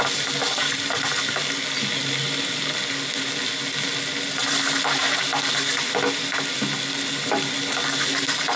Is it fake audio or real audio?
real